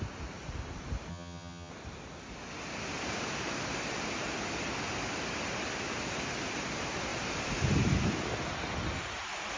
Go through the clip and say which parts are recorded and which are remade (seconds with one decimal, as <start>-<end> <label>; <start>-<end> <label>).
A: 0.0-1.1 recorded; 1.1-1.7 remade; 1.7-9.6 recorded